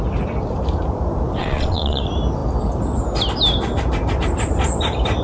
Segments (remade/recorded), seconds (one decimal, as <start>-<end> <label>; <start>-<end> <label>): 0.0-1.4 recorded; 1.4-2.0 remade; 2.0-5.2 recorded